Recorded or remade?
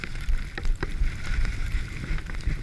recorded